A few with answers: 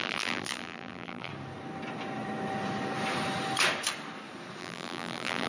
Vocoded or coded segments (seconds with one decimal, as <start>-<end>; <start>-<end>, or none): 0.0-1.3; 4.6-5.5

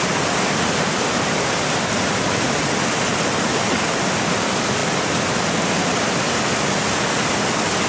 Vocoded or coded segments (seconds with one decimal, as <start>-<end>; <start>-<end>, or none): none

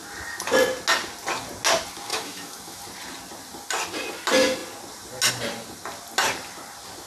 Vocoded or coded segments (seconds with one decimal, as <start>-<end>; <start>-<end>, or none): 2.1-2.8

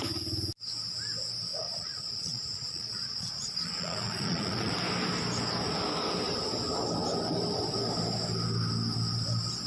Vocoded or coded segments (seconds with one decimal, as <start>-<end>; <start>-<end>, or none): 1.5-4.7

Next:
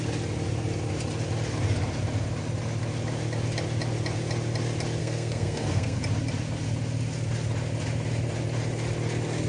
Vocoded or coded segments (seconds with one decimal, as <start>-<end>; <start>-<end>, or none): 5.0-6.0